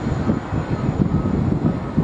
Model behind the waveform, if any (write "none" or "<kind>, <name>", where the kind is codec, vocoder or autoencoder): none